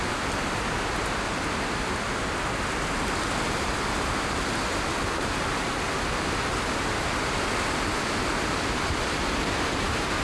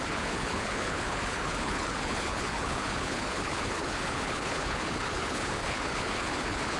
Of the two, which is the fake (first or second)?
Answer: second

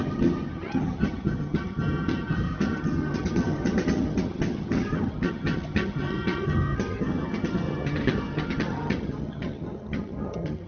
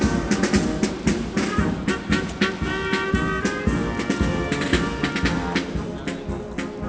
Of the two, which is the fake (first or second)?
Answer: first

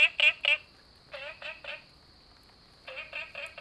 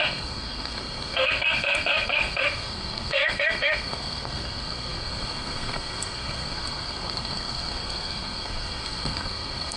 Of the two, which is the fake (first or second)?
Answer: second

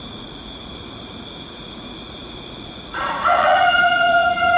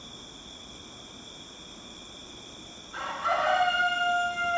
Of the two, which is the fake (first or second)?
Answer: first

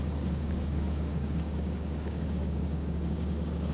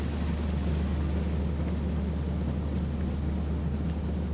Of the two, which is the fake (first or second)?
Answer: first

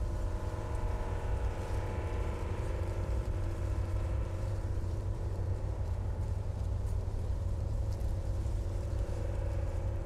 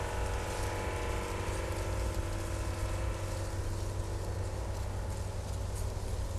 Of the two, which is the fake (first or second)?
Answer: first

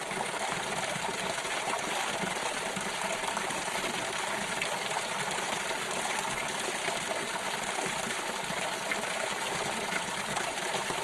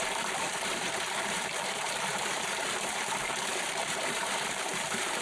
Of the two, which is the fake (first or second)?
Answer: second